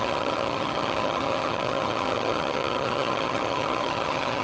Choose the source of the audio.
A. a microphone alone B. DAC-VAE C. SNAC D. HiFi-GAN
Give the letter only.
D